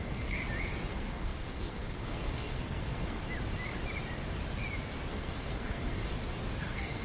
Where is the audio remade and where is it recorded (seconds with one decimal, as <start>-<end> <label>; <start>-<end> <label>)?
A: 0.0-0.4 remade; 0.4-0.9 recorded; 0.9-3.2 remade; 3.2-5.1 recorded; 5.1-6.0 remade; 6.0-6.6 recorded; 6.6-7.0 remade